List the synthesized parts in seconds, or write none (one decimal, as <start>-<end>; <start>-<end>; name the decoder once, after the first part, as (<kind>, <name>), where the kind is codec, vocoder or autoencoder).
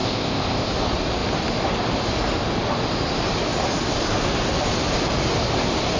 0.0-0.7 (codec, ZipCodec)